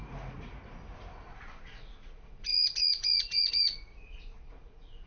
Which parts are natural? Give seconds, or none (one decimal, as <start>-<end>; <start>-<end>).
none